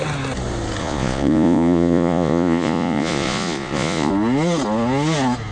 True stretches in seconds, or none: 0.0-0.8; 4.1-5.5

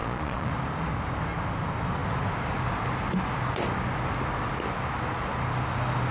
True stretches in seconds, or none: 0.5-6.1

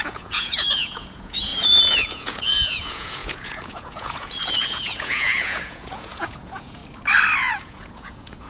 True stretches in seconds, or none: 6.8-7.4

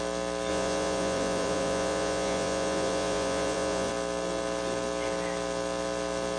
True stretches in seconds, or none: 0.0-0.5; 3.9-6.4

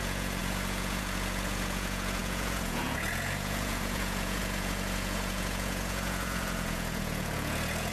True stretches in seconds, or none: none

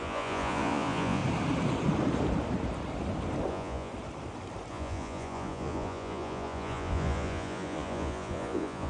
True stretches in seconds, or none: 1.2-3.5; 3.9-4.7

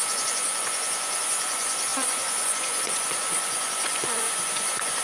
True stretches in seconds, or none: none